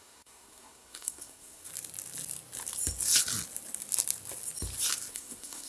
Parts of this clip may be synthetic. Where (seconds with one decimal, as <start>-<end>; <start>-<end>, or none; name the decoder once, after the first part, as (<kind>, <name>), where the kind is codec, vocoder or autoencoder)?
0.0-1.7 (codec, SNAC); 5.1-5.7